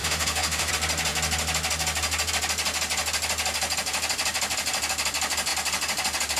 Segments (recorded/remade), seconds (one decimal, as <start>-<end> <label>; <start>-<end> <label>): 0.0-0.7 remade; 0.7-6.4 recorded